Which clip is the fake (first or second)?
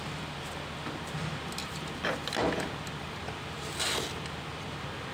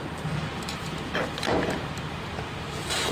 second